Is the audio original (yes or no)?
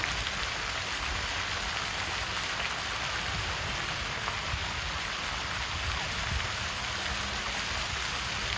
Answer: yes